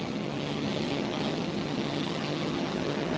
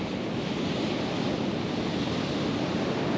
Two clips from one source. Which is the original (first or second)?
second